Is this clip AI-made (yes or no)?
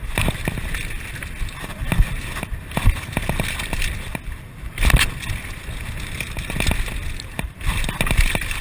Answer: no